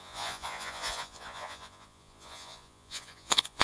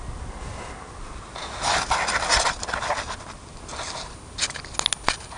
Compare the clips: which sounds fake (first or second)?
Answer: first